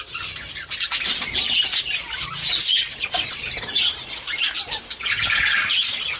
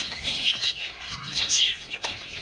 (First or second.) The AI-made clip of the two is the second